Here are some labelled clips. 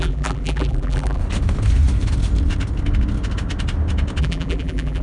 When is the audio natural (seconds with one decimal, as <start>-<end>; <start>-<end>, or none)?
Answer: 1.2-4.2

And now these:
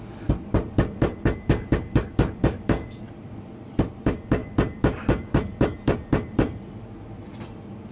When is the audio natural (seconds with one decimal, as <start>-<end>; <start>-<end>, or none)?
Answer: none

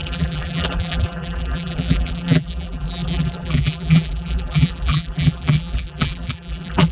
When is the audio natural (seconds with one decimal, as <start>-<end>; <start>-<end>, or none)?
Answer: none

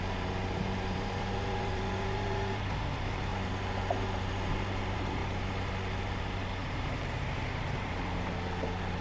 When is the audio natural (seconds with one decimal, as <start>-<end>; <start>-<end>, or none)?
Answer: 3.3-3.8; 5.2-6.0

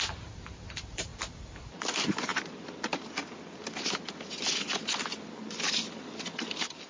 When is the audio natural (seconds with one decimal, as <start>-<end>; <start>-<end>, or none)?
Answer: 1.1-1.6; 2.3-6.4